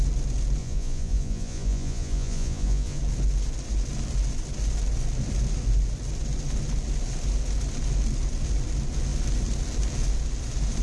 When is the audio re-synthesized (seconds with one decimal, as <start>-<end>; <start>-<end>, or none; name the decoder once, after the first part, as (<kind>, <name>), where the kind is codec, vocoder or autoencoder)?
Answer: 0.6-3.0 (vocoder, Vocos)